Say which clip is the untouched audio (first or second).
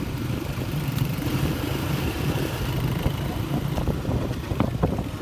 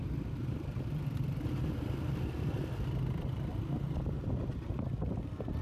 second